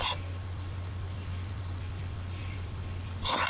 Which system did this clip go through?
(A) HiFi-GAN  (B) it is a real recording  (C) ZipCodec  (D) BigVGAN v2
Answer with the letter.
D